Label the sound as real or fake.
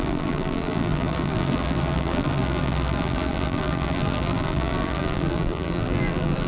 fake